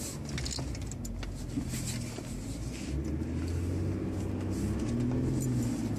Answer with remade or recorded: recorded